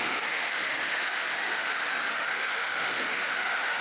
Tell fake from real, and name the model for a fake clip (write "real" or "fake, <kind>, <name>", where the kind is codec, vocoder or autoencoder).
fake, autoencoder, DAC-VAE